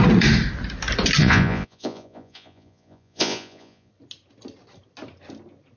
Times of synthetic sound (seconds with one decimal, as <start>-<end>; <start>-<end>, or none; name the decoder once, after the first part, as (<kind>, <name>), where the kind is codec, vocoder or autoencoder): 1.2-3.9 (vocoder, Vocos)